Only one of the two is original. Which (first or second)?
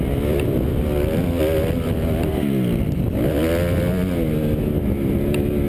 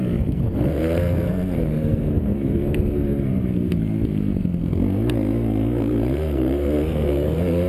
first